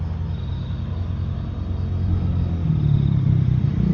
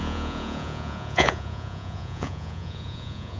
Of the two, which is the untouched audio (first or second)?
first